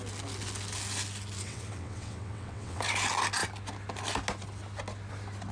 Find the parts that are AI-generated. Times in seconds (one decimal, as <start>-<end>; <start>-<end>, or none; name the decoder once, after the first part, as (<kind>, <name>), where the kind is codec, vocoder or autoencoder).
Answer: 1.4-2.8 (vocoder, WaveNeXt)